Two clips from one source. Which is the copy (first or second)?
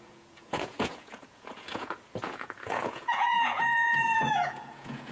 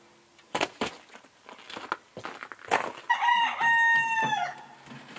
first